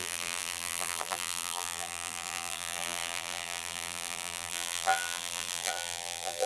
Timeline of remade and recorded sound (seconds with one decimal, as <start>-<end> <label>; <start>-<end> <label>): 0.0-6.5 remade